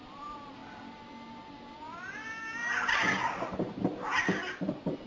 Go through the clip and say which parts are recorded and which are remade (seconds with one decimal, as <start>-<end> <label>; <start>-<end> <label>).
0.0-0.6 remade; 0.6-3.7 recorded; 3.7-5.1 remade